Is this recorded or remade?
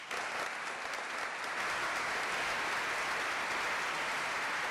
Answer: recorded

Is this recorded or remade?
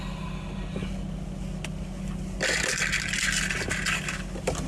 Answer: recorded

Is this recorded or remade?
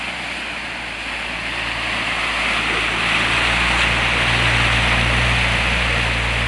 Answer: recorded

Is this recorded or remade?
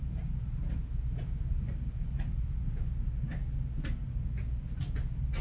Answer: recorded